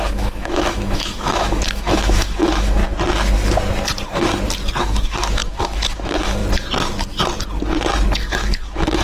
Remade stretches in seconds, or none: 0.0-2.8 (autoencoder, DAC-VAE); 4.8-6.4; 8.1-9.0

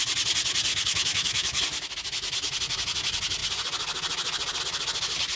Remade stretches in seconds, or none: 0.7-1.6 (autoencoder, DAC-VAE)

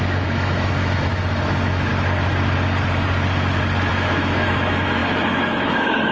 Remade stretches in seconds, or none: 0.0-1.9 (autoencoder, DAC-VAE); 3.9-6.1